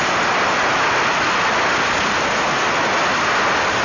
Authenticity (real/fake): real